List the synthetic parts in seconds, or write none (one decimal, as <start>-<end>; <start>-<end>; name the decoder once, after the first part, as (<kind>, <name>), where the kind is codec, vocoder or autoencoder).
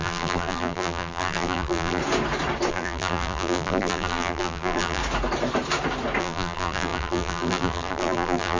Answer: 0.0-2.0 (vocoder, BigVGAN v2); 2.7-5.0; 6.2-8.6